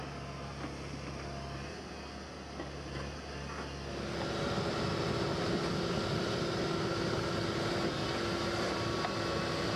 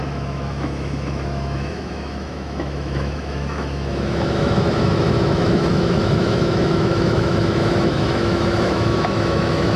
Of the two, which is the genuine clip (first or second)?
first